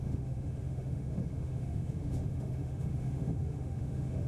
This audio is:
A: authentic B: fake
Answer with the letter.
B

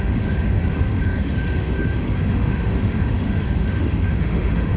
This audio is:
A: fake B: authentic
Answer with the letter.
A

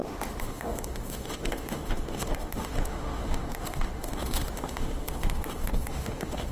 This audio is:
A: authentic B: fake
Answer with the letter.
B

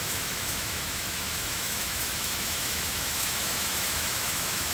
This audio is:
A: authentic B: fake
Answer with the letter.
B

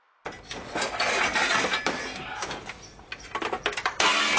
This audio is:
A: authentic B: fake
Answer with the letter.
A